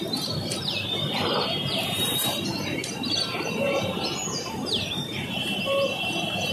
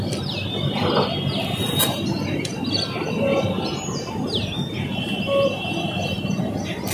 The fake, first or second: first